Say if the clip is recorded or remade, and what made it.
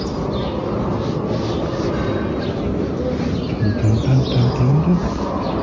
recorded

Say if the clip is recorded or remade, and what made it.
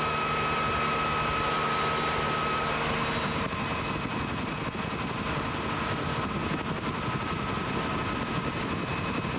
recorded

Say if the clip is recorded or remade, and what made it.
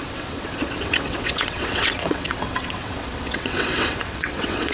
remade, vocoder, WaveNeXt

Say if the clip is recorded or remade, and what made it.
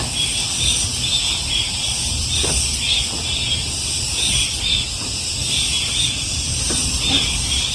recorded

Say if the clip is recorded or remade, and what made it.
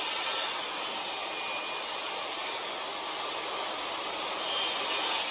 recorded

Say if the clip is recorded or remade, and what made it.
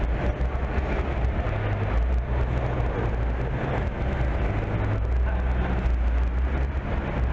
recorded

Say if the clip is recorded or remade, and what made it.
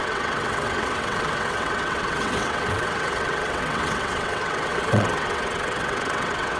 remade, vocoder, WaveNeXt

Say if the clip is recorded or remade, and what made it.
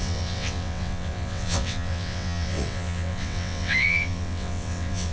remade, vocoder, WaveNeXt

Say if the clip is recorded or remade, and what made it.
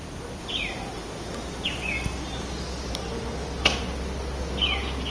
recorded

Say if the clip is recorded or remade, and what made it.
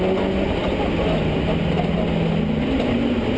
recorded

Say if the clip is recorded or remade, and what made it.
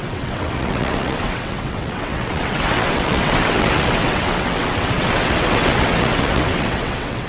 remade, vocoder, WaveNeXt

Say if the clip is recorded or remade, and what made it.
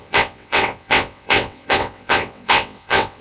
remade, vocoder, WaveNeXt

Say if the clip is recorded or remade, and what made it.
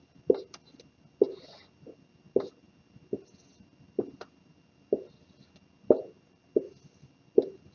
recorded